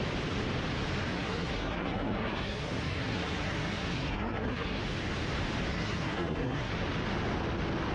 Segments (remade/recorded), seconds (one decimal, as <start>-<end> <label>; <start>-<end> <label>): 0.0-1.1 recorded; 1.1-4.8 remade; 4.8-5.7 recorded; 5.7-6.7 remade; 6.7-7.9 recorded